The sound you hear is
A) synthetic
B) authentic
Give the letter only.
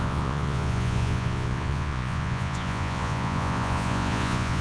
A